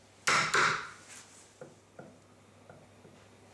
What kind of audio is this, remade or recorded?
recorded